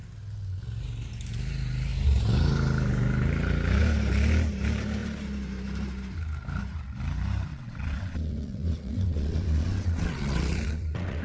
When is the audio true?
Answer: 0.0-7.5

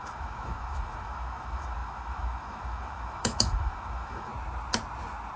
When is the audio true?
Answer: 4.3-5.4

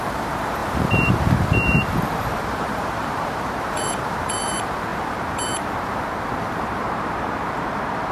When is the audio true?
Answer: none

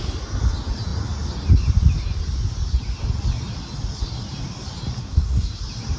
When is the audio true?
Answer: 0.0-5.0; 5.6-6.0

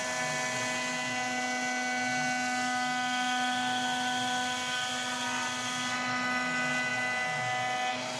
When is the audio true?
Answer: 0.0-8.2

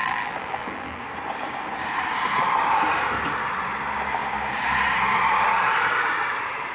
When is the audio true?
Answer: 1.0-6.7

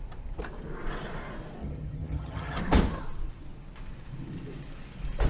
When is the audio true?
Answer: 0.0-1.6; 2.6-5.3

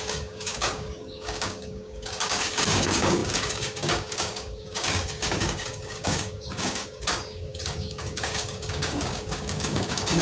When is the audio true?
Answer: none